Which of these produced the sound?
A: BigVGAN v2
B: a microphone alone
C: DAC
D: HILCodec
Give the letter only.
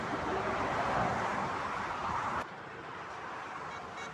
A